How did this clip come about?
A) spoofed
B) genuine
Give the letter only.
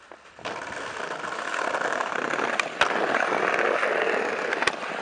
B